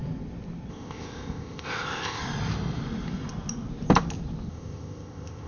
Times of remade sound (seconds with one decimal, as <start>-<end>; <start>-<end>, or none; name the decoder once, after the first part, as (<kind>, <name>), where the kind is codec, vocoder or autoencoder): 0.7-2.2 (codec, ZipCodec); 4.5-5.5